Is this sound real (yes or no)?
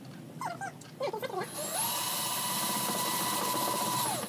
yes